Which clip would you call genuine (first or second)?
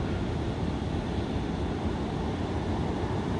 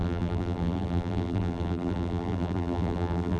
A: first